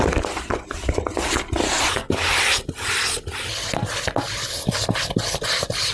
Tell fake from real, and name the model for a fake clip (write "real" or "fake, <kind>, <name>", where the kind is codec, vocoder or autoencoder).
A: real